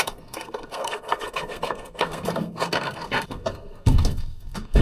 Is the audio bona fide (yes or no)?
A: no